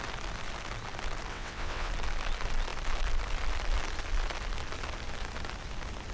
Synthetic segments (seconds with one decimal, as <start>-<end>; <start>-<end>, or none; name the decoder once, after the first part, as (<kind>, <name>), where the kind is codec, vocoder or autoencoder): 1.3-1.9 (vocoder, WaveNeXt)